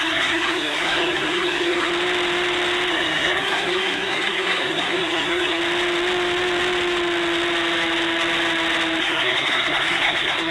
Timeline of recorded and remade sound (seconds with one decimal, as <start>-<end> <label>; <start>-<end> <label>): 0.0-1.9 remade; 1.9-2.9 recorded; 2.9-5.6 remade; 5.6-9.0 recorded; 9.0-10.5 remade